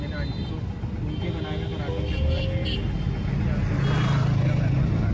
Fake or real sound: real